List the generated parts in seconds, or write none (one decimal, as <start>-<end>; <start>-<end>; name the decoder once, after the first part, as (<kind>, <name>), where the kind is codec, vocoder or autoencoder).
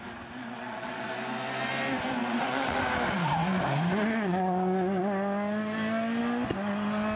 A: 0.4-1.0 (vocoder, WaveNeXt); 2.2-2.8